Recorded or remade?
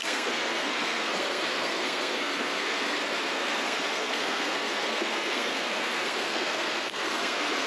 remade